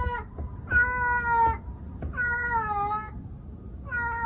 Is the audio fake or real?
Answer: real